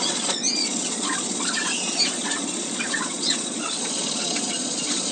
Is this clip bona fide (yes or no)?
no